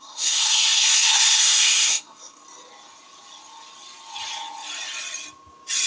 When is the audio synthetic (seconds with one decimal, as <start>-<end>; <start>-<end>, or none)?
0.0-2.4